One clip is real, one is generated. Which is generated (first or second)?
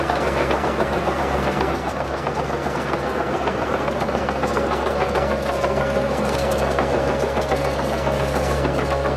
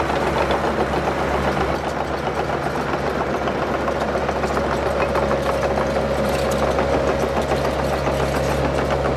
first